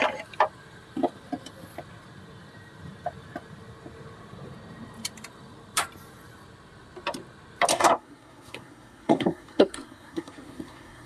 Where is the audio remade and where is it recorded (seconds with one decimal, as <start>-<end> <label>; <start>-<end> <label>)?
0.0-7.7 recorded; 7.7-11.1 remade